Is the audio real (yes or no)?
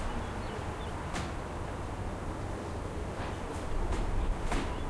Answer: yes